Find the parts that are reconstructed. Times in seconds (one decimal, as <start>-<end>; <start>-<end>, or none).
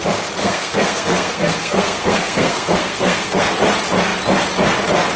0.4-3.5